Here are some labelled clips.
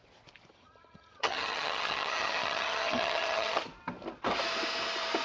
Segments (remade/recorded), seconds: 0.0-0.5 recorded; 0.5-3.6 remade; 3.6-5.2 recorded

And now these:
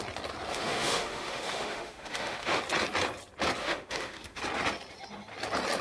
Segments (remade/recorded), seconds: 0.0-0.5 recorded; 0.5-2.6 remade; 2.6-3.6 recorded; 3.6-4.4 remade; 4.4-5.8 recorded

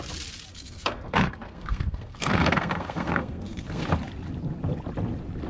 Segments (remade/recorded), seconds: 0.0-0.5 recorded; 0.5-3.8 remade; 3.8-5.5 recorded

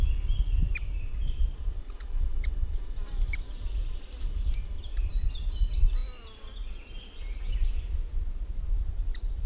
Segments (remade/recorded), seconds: 0.0-0.7 recorded; 0.7-3.1 remade; 3.1-3.8 recorded; 3.8-5.4 remade; 5.4-8.2 recorded; 8.2-9.5 remade

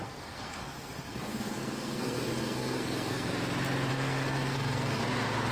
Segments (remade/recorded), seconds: 0.0-3.3 remade; 3.3-3.9 recorded; 3.9-5.0 remade; 5.0-5.5 recorded